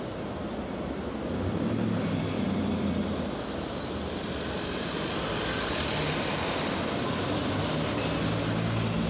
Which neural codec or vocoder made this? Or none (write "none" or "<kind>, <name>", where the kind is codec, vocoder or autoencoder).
none